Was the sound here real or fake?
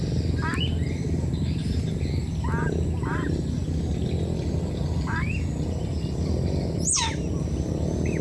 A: real